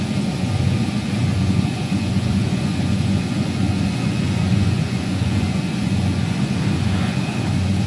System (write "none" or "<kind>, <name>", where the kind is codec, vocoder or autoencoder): vocoder, Vocos